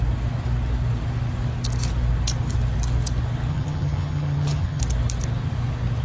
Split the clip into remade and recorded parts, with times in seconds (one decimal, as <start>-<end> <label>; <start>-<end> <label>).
0.0-3.5 recorded; 3.5-4.8 remade; 4.8-6.0 recorded

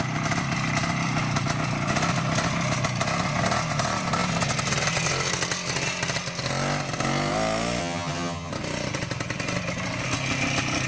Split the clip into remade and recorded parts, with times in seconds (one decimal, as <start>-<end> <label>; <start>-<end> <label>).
0.0-7.8 recorded; 7.8-8.5 remade; 8.5-10.9 recorded

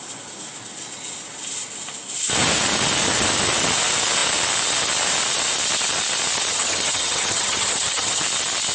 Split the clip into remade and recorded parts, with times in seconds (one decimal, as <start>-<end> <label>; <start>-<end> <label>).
0.0-6.5 recorded; 6.5-8.2 remade; 8.2-8.7 recorded

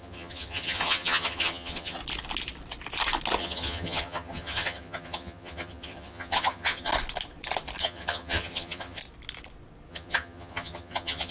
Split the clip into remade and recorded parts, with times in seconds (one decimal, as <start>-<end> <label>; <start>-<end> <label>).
0.0-2.0 remade; 2.0-3.4 recorded; 3.4-6.9 remade; 6.9-7.8 recorded; 7.8-9.0 remade; 9.0-9.9 recorded; 9.9-11.3 remade

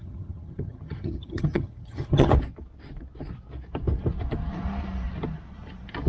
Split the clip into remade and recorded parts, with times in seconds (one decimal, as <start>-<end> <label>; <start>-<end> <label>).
0.0-2.3 remade; 2.3-6.1 recorded

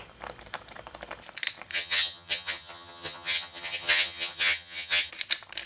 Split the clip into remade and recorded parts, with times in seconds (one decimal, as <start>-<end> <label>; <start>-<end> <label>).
0.0-1.7 recorded; 1.7-5.1 remade; 5.1-5.7 recorded

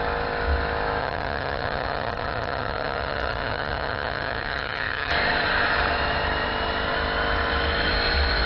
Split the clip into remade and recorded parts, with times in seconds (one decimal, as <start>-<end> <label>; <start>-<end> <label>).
0.0-1.0 recorded; 1.0-5.1 remade; 5.1-8.5 recorded

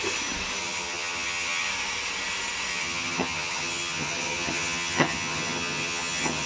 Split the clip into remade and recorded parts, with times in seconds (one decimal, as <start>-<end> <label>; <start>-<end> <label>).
0.0-0.6 recorded; 0.6-1.7 remade; 1.7-2.7 recorded; 2.7-6.5 remade